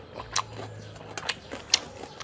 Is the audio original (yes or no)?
yes